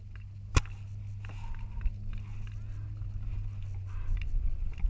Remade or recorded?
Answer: recorded